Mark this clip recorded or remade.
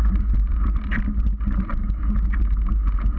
recorded